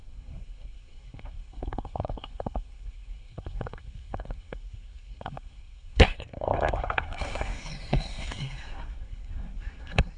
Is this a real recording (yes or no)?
no